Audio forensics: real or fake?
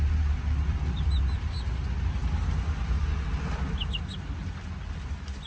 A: real